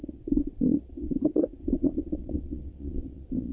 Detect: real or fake fake